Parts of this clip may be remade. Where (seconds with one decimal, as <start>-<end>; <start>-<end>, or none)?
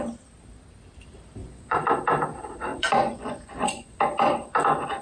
1.4-2.0; 2.7-4.0